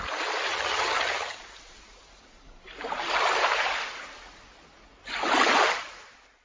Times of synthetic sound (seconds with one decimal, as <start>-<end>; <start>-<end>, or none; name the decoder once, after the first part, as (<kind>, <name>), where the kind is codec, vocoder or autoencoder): 0.5-1.4 (vocoder, HiFi-GAN)